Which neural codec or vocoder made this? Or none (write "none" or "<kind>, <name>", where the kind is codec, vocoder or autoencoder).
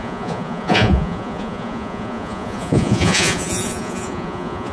vocoder, Vocos